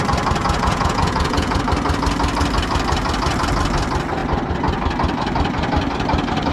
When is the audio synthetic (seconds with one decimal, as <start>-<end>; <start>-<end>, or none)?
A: 0.4-1.6